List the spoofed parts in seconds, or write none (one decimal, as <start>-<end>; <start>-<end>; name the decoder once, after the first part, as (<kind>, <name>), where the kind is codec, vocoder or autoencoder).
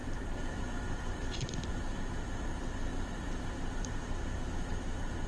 0.0-2.0 (vocoder, BigVGAN v2); 2.9-4.4